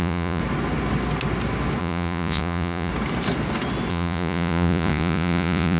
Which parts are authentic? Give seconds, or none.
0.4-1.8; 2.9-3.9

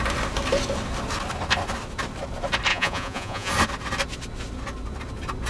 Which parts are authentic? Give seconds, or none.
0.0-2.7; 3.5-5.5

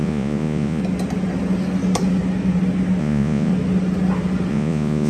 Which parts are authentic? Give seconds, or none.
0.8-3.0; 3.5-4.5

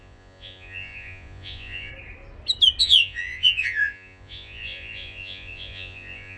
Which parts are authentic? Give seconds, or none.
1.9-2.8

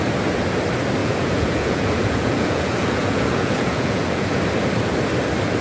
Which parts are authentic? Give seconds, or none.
0.0-1.0; 4.4-5.6